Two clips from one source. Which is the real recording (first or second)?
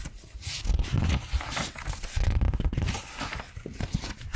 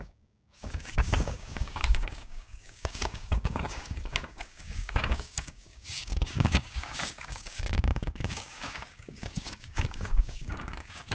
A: first